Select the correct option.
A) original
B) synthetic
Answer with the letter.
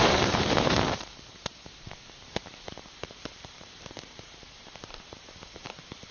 B